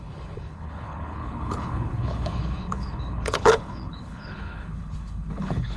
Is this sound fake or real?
fake